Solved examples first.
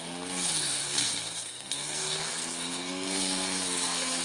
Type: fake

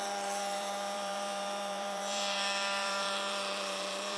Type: fake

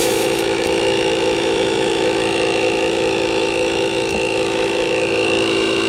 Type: fake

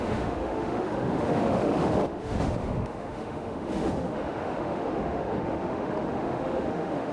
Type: fake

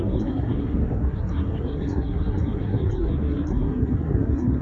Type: fake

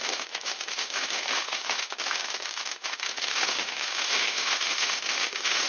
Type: fake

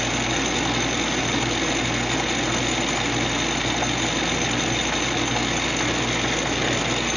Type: real